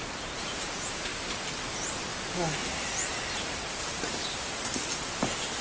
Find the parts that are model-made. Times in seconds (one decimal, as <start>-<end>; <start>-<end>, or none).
0.0-1.1; 1.7-2.1; 3.4-4.2; 5.1-5.6